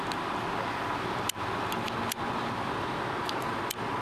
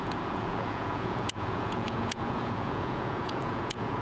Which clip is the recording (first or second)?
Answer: first